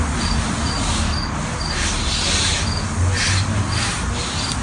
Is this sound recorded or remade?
recorded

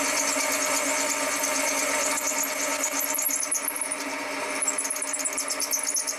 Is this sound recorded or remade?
recorded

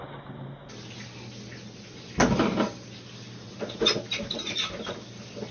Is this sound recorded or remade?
recorded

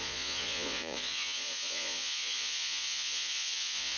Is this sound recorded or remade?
remade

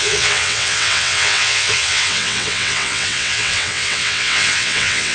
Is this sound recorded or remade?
remade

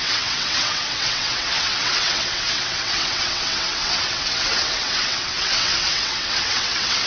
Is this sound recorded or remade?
remade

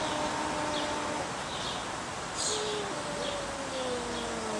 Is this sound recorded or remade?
recorded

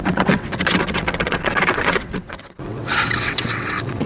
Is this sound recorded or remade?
remade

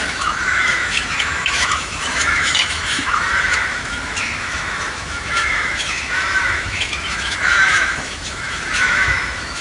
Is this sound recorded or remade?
remade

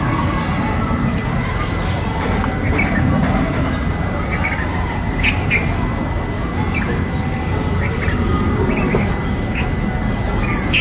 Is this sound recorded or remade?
recorded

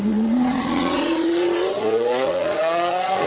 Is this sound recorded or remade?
remade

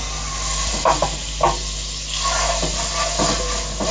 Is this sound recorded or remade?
recorded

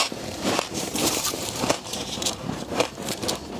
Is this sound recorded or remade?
remade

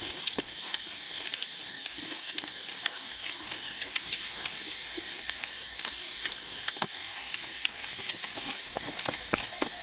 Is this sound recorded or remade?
remade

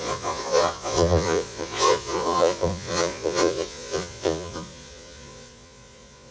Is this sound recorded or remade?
remade